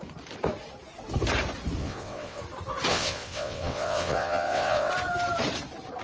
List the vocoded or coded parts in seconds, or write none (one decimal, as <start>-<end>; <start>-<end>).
1.8-2.4; 2.9-4.9